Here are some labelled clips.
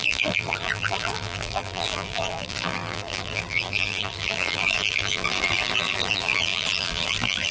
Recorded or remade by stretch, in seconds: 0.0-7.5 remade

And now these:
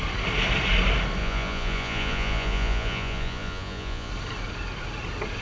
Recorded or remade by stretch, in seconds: 0.0-1.2 recorded; 1.2-4.1 remade; 4.1-5.4 recorded

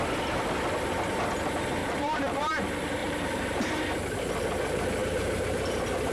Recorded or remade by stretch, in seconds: 0.0-1.8 recorded; 1.8-2.4 remade; 2.4-3.0 recorded; 3.0-3.6 remade; 3.6-5.0 recorded; 5.0-6.1 remade

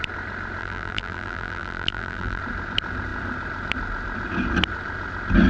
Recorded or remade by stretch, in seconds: 0.0-0.6 recorded; 0.6-2.4 remade; 2.4-5.5 recorded

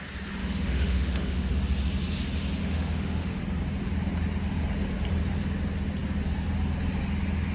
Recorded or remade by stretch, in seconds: 0.0-0.4 recorded; 0.4-1.5 remade; 1.5-2.6 recorded; 2.6-3.4 remade; 3.4-7.5 recorded

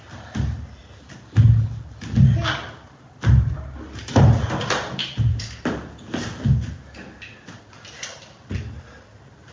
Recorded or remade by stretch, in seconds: 0.0-9.5 recorded

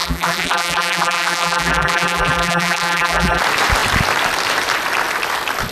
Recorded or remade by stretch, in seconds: 0.0-3.4 remade; 3.4-5.7 recorded